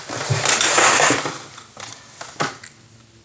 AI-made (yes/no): no